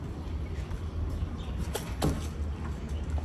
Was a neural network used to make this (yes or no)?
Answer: no